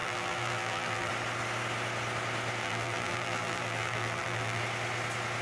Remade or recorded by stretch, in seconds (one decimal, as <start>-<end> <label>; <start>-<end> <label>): 0.0-1.1 remade; 1.1-2.6 recorded; 2.6-4.6 remade; 4.6-5.4 recorded